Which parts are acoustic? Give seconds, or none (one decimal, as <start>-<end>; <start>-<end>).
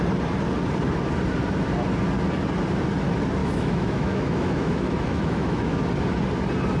0.0-3.4; 5.8-6.8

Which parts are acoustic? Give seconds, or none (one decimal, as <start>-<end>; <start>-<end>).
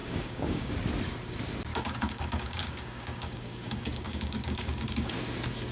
0.7-1.7; 5.1-5.7